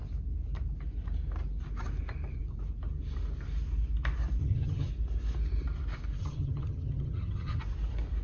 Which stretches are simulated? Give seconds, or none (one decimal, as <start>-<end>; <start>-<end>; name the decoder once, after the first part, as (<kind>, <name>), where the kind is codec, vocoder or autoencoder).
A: 4.4-4.9 (vocoder, HiFi-GAN); 6.2-7.6